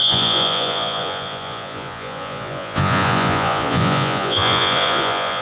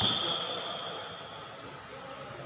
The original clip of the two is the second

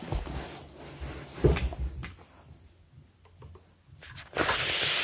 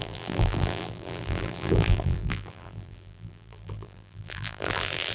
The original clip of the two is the first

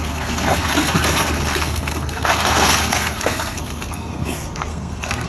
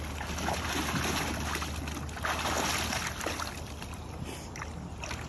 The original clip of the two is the second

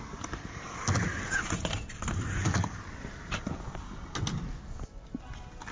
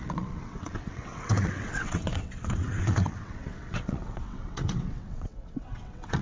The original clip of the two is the first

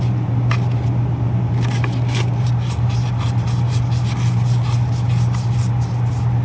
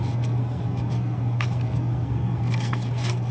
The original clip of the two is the first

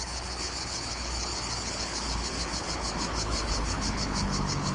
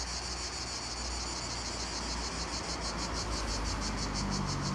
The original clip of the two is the second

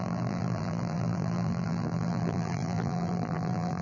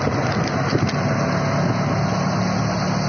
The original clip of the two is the second